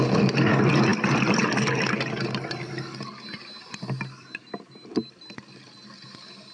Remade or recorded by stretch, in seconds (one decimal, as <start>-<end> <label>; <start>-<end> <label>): 0.0-6.5 recorded

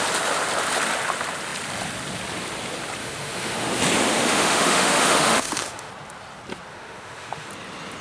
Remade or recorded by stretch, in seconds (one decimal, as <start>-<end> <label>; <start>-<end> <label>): 0.0-3.0 recorded; 3.0-3.8 remade; 3.8-4.2 recorded; 4.2-5.9 remade; 5.9-6.7 recorded; 6.7-7.5 remade; 7.5-8.0 recorded

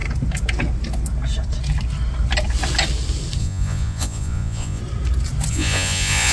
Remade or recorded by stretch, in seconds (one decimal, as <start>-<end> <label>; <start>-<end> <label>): 0.0-3.4 recorded; 3.4-4.8 remade; 4.8-5.5 recorded; 5.5-6.3 remade

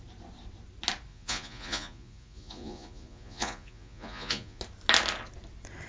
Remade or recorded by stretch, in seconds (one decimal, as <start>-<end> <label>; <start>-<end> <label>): 0.0-1.1 recorded; 1.1-4.6 remade; 4.6-5.9 recorded

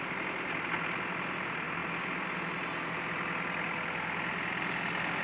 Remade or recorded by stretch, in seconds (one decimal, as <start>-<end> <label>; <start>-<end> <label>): 0.0-5.2 recorded

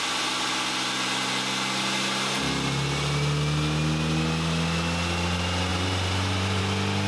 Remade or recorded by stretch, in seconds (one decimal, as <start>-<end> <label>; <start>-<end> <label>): 0.0-5.7 recorded; 5.7-6.6 remade; 6.6-7.1 recorded

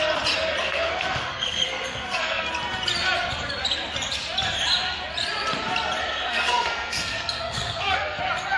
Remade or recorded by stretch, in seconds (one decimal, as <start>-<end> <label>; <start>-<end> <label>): 0.0-0.6 recorded; 0.6-2.5 remade; 2.5-6.0 recorded; 6.0-8.2 remade; 8.2-8.6 recorded